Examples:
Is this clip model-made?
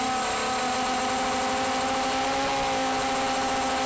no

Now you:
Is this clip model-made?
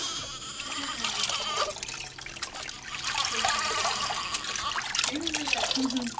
no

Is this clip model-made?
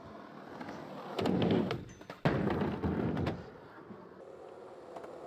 no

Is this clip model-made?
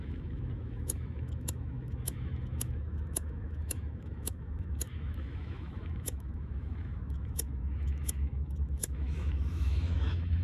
yes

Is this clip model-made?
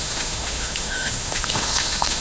yes